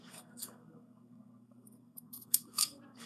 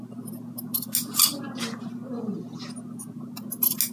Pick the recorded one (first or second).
second